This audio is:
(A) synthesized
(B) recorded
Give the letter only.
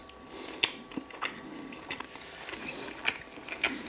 B